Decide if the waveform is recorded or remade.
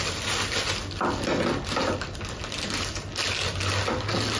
recorded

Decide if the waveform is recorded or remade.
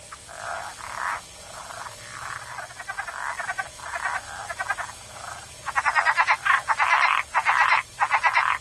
recorded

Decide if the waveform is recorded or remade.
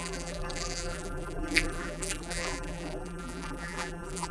remade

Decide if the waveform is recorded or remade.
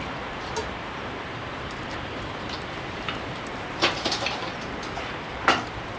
remade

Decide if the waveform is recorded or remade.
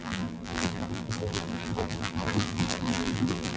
remade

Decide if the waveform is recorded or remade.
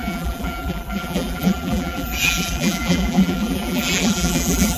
remade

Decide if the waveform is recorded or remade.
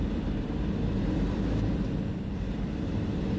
remade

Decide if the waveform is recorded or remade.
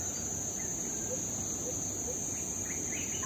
recorded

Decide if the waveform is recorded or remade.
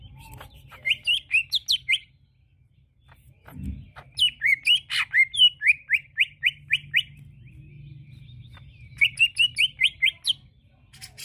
recorded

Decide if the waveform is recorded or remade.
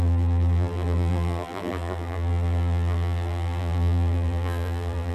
remade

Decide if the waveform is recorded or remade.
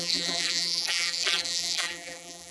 remade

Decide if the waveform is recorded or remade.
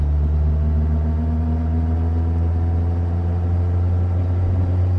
recorded